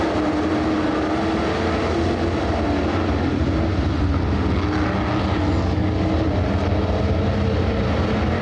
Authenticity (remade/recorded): recorded